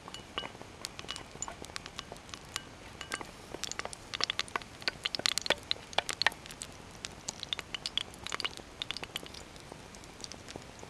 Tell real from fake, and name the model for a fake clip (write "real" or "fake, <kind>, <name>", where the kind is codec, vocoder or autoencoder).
real